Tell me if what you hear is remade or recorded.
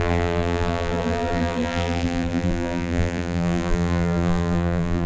remade